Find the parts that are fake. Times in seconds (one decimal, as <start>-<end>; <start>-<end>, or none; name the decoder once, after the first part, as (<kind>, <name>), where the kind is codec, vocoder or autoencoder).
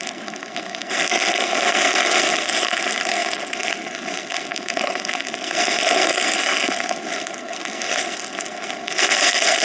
0.0-9.6 (codec, SNAC)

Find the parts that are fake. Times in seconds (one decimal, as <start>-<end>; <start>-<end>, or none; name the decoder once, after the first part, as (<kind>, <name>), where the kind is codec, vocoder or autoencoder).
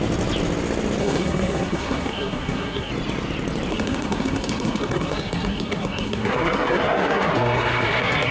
1.0-2.9 (codec, SNAC); 3.7-8.3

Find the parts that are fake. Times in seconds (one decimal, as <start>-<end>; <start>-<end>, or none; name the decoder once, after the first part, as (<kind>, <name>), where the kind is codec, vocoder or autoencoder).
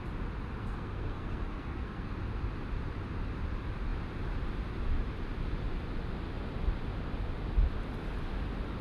0.6-2.1 (codec, SNAC)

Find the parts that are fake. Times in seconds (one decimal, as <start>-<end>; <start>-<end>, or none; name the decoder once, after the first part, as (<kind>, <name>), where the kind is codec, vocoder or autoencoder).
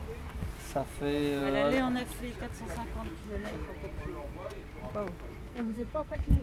3.2-3.7 (codec, SNAC); 5.4-6.4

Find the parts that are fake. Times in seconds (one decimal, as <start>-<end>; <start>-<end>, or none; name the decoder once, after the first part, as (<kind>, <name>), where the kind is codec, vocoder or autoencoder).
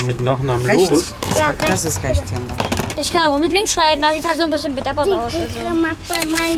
0.0-0.4 (codec, SNAC); 0.9-1.6; 2.9-4.6; 5.9-6.6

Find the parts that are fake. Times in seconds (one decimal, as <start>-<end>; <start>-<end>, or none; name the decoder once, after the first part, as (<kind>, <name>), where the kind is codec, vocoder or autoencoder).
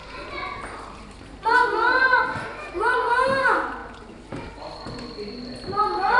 none